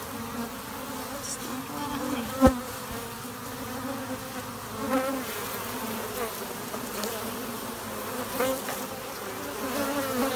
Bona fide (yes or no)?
yes